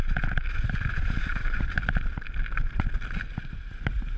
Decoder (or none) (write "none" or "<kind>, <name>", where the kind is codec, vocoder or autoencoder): none